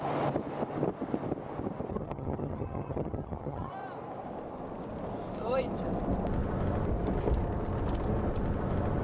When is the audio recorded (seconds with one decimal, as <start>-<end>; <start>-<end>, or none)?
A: 0.0-1.9; 3.7-9.0